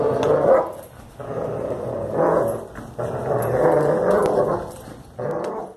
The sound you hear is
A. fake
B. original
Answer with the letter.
B